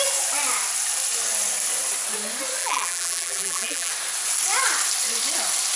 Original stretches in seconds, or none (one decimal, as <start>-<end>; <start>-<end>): 0.0-2.6; 3.9-5.8